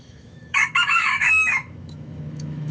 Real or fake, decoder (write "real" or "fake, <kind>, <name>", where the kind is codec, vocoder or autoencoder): fake, autoencoder, DAC-VAE